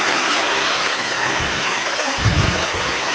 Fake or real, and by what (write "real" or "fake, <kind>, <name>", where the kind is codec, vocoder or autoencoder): fake, codec, SNAC